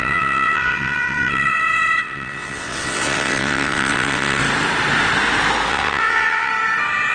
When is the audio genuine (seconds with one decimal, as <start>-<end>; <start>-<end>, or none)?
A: 4.4-5.7; 6.5-7.1